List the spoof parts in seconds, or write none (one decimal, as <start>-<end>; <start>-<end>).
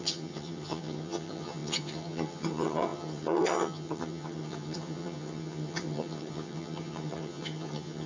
0.0-8.1